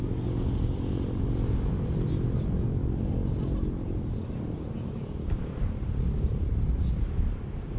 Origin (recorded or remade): recorded